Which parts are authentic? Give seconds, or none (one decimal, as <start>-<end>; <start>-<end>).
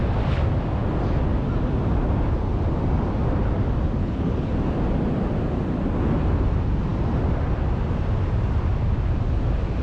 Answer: 0.0-4.0; 4.5-9.8